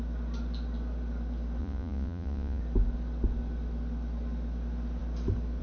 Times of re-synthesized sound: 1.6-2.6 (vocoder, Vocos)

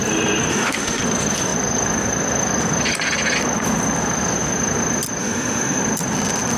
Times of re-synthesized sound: 0.5-1.0 (autoencoder, DAC-VAE); 5.2-5.8